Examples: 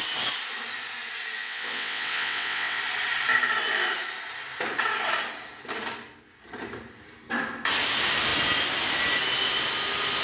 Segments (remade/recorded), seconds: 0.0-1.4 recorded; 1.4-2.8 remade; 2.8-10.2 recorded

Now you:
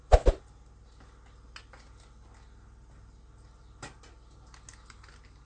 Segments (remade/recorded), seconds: 0.0-5.5 recorded